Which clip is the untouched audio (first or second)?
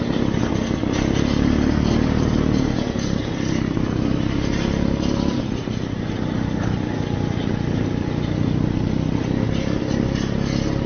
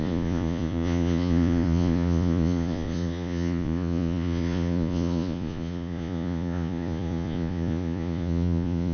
first